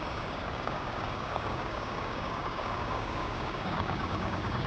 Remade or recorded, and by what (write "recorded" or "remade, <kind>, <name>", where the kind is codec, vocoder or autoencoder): remade, codec, DAC